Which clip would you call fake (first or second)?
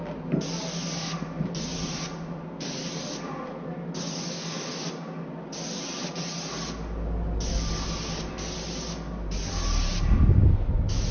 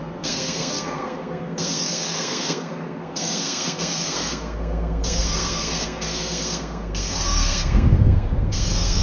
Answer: second